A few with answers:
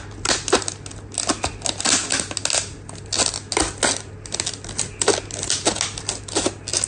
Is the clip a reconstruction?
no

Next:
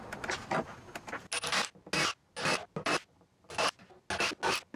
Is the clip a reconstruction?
no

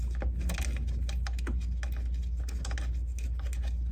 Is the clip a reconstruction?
no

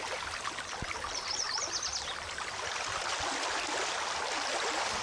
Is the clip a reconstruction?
no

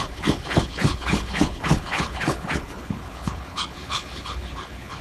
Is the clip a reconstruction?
yes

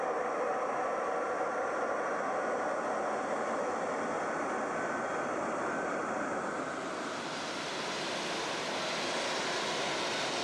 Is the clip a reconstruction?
no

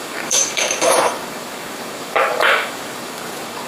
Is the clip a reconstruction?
yes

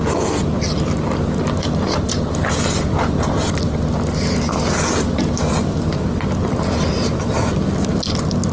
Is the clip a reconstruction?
no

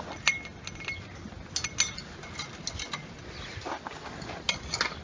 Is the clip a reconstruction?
no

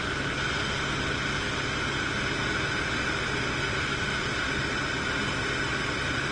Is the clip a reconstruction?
no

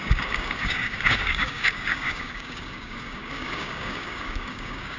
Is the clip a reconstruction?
yes